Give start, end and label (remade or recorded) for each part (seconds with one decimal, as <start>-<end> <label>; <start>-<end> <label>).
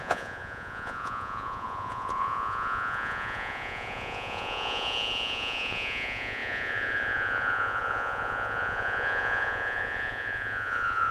0.0-11.1 remade